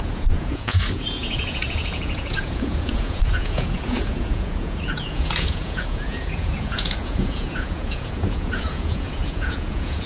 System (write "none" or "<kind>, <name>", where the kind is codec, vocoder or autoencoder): vocoder, Vocos